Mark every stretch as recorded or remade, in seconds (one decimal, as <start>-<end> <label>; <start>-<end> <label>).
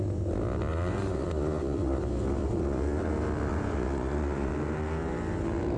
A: 0.0-0.7 recorded; 0.7-2.0 remade; 2.0-2.4 recorded; 2.4-3.1 remade; 3.1-3.5 recorded; 3.5-4.5 remade; 4.5-5.8 recorded